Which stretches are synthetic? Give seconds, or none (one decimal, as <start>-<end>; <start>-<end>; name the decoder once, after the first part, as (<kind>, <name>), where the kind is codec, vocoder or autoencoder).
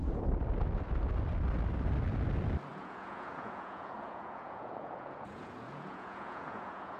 2.7-7.0 (vocoder, Vocos)